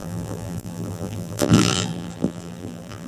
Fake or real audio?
fake